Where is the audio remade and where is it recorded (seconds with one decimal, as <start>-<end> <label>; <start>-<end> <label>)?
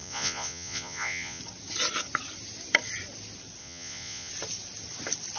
0.0-1.4 remade; 1.4-3.6 recorded; 3.6-4.3 remade; 4.3-5.4 recorded